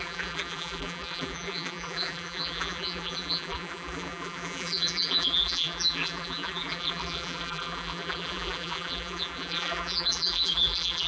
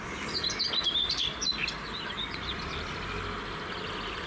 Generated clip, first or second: first